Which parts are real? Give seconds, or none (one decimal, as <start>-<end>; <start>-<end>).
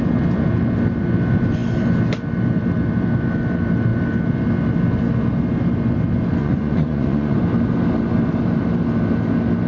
0.0-6.4; 7.4-9.7